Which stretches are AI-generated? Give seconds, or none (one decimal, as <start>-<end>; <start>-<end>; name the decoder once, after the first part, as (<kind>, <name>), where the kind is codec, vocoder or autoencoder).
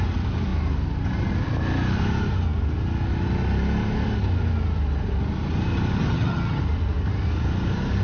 6.0-6.6 (vocoder, HiFi-GAN)